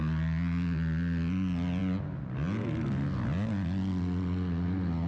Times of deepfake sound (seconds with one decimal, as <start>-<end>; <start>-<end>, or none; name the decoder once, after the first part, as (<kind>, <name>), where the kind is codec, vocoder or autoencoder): none